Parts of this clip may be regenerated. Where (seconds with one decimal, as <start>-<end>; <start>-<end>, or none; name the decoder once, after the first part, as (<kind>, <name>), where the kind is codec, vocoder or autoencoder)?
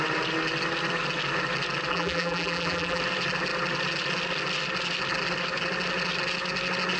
1.9-3.0 (vocoder, BigVGAN v2)